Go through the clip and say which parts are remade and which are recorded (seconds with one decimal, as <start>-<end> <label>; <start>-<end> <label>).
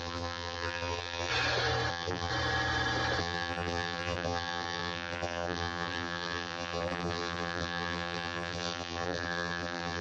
0.0-1.3 remade; 1.3-1.9 recorded; 1.9-2.3 remade; 2.3-3.2 recorded; 3.2-10.0 remade